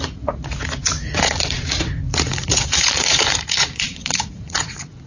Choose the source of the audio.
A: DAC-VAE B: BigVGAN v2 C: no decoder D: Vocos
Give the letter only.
D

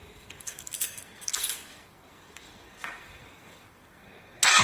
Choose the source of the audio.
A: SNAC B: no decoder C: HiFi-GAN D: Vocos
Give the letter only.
A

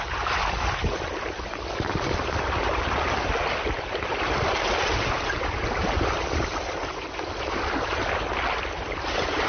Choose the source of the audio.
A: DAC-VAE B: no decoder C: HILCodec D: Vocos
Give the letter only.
B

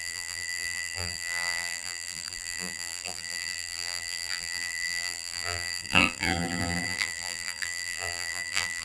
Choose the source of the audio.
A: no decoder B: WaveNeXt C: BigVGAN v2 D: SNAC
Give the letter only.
C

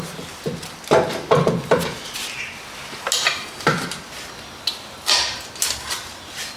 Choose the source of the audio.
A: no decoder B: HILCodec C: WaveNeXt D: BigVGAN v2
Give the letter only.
A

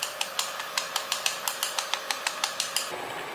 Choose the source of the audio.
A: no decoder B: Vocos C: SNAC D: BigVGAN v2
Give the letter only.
A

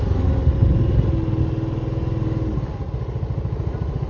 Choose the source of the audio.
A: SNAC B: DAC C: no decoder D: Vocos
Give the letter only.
C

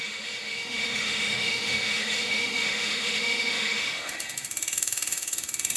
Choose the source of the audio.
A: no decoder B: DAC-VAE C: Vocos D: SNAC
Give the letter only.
B